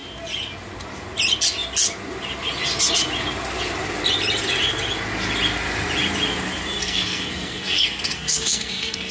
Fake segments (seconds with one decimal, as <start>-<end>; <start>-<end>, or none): 6.8-9.1